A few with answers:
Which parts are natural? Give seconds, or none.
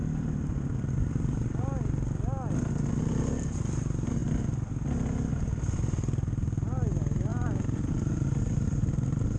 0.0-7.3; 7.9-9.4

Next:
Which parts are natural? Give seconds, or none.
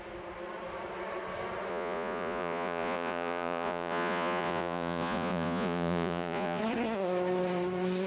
0.0-1.7; 6.6-8.1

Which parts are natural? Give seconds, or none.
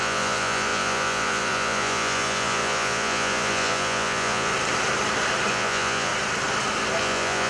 4.5-5.5; 6.1-7.0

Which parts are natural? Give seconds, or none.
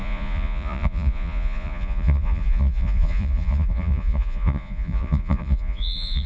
none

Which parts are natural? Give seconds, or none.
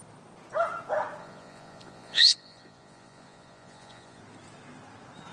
0.0-1.2; 4.2-5.3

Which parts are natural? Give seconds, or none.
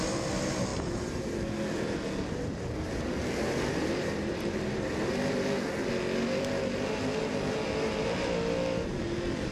0.0-9.5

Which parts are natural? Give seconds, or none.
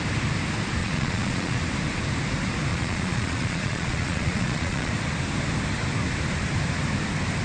0.0-0.8; 1.6-2.7; 4.9-7.4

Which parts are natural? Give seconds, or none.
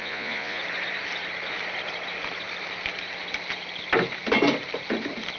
0.6-5.4